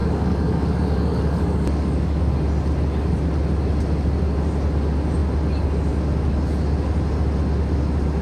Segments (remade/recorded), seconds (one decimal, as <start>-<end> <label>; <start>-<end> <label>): 0.0-2.3 remade; 2.3-8.2 recorded